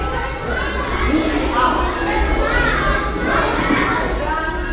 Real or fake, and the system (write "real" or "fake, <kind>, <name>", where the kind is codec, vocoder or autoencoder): real